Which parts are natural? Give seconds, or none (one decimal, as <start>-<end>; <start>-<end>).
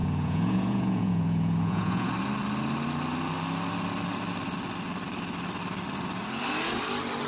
2.1-7.3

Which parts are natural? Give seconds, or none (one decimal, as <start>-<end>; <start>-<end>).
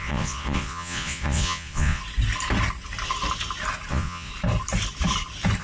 2.0-3.9; 4.3-5.6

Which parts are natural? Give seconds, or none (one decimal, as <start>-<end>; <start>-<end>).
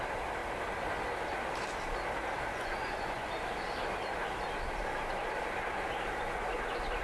0.0-2.5; 3.3-7.0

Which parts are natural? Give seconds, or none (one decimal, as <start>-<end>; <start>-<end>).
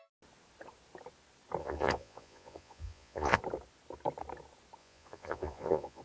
0.0-1.6; 3.4-4.8